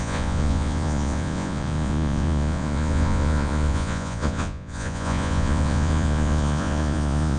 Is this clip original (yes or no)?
no